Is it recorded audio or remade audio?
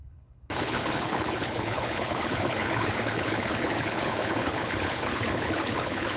remade